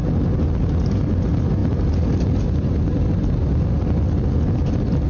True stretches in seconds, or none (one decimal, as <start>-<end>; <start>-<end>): 0.0-5.1